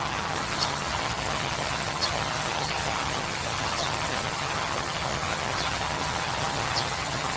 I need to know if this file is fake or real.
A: fake